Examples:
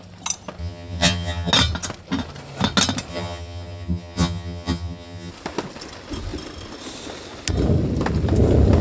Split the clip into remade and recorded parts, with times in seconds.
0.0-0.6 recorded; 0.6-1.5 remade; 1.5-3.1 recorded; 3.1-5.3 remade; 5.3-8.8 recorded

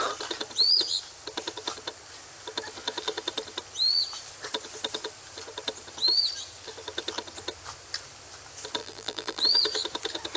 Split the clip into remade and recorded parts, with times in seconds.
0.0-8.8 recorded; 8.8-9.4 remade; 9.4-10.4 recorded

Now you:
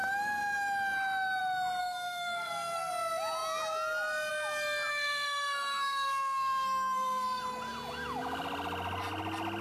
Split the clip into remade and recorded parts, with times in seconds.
0.0-1.8 recorded; 1.8-2.9 remade; 2.9-4.9 recorded; 4.9-7.4 remade; 7.4-9.6 recorded

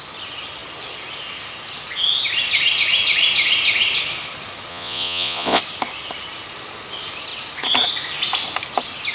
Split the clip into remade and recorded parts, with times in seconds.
0.0-4.7 recorded; 4.7-5.6 remade; 5.6-9.1 recorded

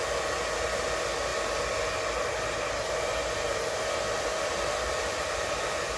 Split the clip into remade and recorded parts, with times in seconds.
0.0-6.0 recorded